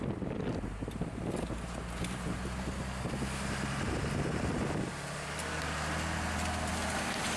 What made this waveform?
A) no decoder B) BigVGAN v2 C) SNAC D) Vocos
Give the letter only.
A